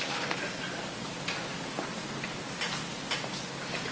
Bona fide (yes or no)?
yes